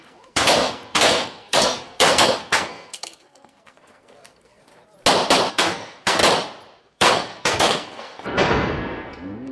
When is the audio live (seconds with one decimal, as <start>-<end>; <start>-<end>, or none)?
4.7-5.5; 6.2-6.8